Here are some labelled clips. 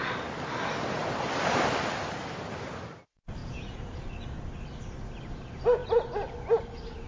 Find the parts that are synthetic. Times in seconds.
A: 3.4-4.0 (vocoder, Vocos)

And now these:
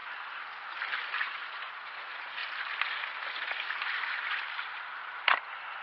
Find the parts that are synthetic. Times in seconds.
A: 1.2-2.4 (vocoder, Vocos)

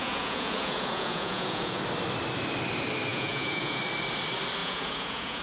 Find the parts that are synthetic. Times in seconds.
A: 0.0-1.8 (vocoder, Vocos); 3.1-3.8; 4.6-5.4

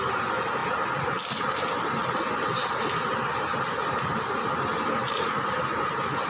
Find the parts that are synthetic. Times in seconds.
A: 5.0-5.5 (vocoder, Vocos)

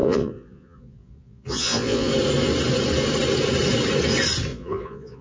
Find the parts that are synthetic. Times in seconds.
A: 0.0-2.1 (vocoder, Vocos); 4.5-5.2